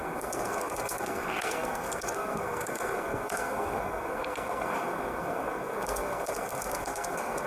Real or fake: fake